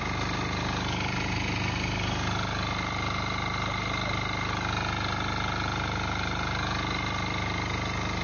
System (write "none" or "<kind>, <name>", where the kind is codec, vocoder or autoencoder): none